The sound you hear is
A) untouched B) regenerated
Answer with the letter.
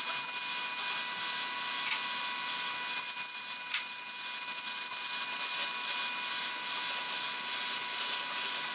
A